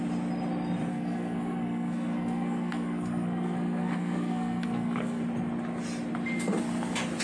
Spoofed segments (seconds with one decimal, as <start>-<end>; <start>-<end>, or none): 0.9-5.2